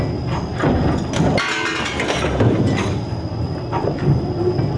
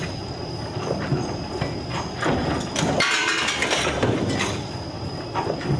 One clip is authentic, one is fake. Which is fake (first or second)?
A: second